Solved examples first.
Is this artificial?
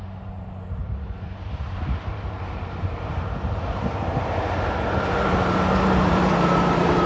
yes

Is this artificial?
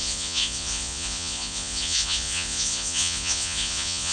yes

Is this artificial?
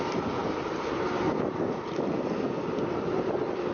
yes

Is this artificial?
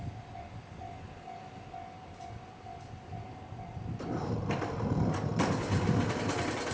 no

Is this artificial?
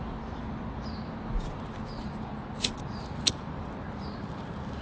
no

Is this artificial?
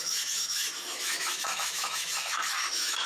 yes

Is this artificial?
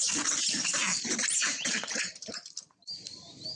no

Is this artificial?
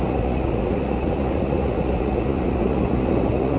yes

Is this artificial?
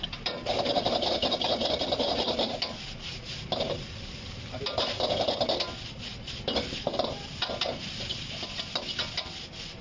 no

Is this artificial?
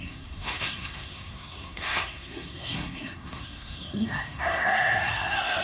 yes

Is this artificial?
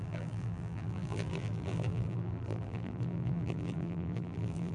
yes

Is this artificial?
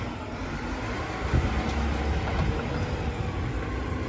no